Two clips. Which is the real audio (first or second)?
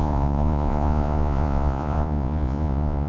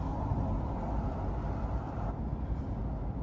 second